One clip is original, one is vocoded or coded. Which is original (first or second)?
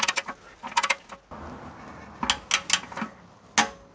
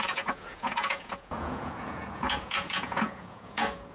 first